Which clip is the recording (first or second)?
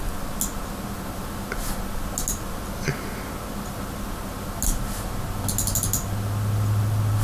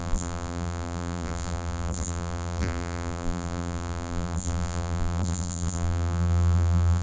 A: first